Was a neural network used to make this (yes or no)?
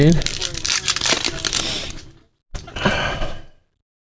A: no